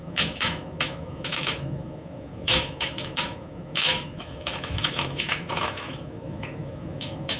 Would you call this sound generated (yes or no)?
yes